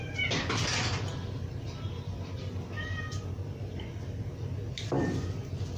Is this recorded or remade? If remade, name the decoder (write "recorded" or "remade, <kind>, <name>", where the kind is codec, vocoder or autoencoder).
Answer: recorded